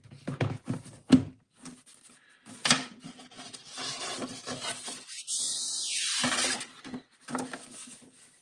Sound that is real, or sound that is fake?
real